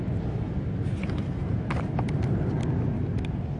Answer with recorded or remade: recorded